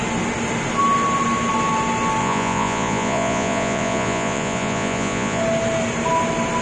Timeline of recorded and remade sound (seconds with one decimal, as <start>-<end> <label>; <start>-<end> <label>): 0.0-2.2 recorded; 2.2-5.4 remade; 5.4-6.6 recorded